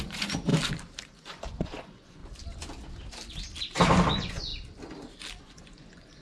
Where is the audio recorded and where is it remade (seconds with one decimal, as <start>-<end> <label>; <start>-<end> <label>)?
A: 0.0-0.5 remade; 0.5-1.0 recorded; 1.0-2.2 remade; 2.2-4.1 recorded; 4.1-4.5 remade; 4.5-5.4 recorded; 5.4-6.2 remade